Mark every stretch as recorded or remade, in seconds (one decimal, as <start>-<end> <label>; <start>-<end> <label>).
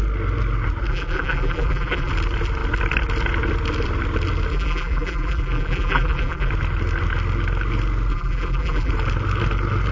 0.0-0.9 recorded; 0.9-2.1 remade; 2.1-4.5 recorded; 4.5-6.5 remade; 6.5-8.1 recorded; 8.1-8.9 remade; 8.9-9.9 recorded